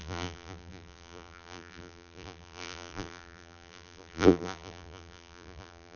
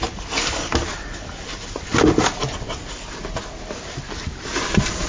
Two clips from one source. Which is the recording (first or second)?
second